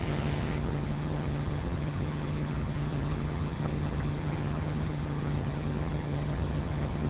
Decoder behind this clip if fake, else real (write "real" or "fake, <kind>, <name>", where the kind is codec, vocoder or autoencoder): fake, vocoder, HiFi-GAN